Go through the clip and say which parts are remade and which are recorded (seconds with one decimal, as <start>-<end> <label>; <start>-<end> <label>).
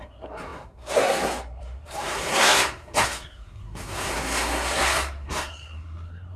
0.0-6.4 remade